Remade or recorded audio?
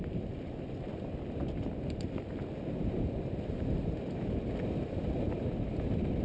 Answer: recorded